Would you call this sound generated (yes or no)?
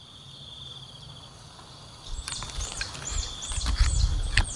no